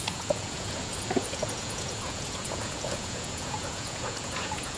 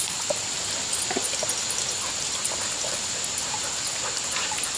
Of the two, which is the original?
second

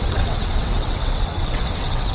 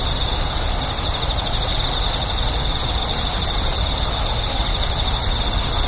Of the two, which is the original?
second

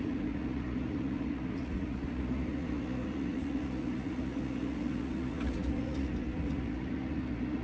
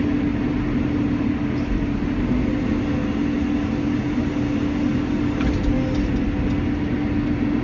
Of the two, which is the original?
second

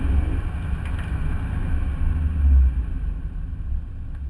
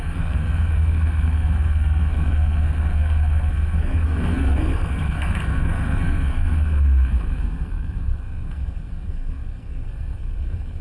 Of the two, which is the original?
first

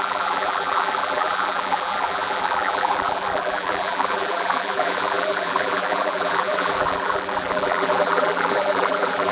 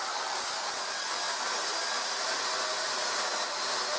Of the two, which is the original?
second